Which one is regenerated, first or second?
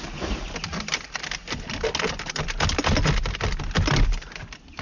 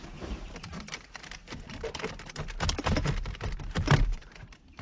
second